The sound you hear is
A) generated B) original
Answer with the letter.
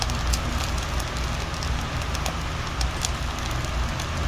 B